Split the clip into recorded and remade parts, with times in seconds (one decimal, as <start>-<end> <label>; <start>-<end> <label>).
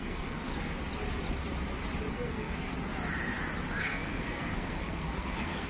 0.0-0.5 remade; 0.5-2.1 recorded; 2.1-2.7 remade; 2.7-3.8 recorded; 3.8-5.7 remade